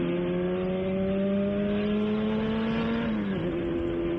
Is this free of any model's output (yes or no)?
yes